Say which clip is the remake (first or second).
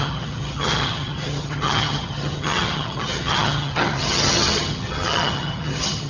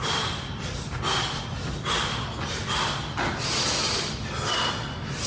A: first